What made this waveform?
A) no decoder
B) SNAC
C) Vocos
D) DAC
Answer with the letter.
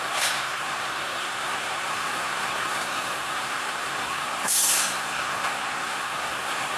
B